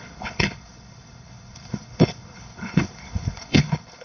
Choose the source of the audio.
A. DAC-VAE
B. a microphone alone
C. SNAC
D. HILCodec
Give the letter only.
D